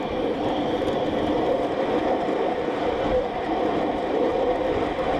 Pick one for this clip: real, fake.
real